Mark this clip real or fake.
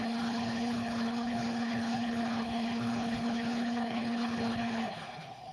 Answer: fake